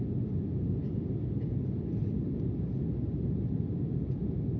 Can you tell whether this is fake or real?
real